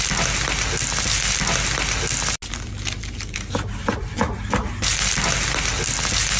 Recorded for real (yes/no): yes